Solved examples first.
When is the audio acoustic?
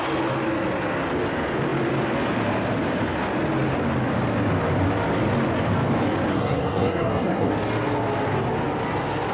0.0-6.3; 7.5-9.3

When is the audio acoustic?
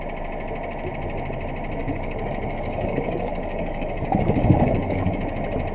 0.0-1.8; 5.2-5.7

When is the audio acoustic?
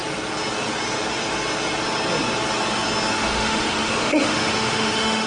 0.0-3.2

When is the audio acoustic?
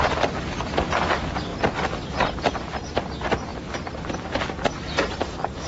0.0-1.5; 2.5-3.5; 4.4-5.7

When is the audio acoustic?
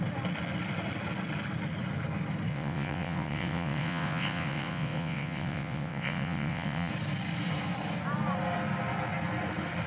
0.0-2.5; 6.9-9.9